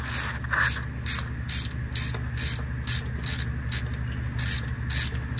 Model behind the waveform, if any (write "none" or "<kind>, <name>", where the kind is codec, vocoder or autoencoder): none